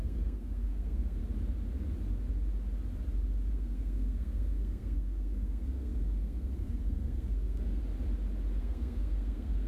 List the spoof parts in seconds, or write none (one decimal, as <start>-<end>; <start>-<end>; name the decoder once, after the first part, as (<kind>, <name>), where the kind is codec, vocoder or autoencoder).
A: 0.0-1.2 (codec, SNAC); 3.5-7.8; 8.6-9.7